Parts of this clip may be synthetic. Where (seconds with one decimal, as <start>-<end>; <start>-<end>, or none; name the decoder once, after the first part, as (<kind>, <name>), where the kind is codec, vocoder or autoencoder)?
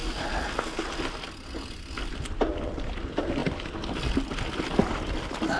none